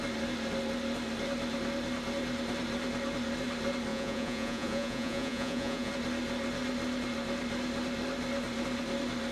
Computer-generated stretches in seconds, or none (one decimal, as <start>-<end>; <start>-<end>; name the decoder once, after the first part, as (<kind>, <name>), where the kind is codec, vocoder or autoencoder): 3.9-5.9 (vocoder, Vocos)